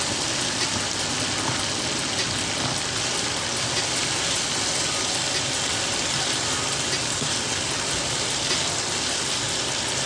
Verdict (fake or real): real